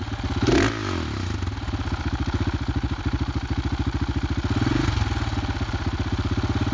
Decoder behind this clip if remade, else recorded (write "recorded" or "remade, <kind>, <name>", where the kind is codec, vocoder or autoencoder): recorded